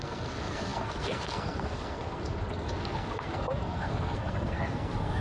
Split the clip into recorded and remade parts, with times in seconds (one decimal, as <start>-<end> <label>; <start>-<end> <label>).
0.0-5.2 remade